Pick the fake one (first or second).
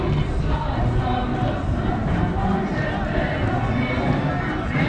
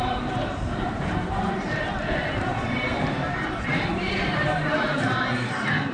second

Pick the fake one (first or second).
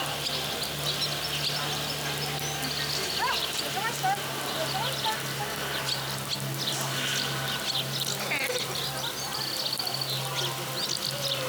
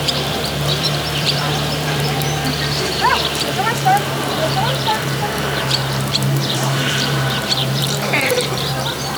second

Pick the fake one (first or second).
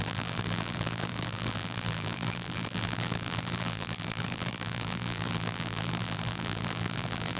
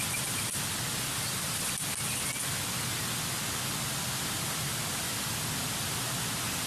first